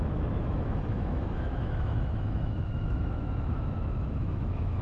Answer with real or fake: fake